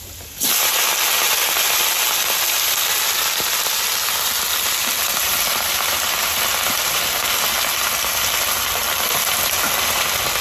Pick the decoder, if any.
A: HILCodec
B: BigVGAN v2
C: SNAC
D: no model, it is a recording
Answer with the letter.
D